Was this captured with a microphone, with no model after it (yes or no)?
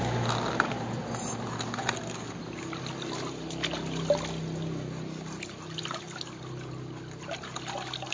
yes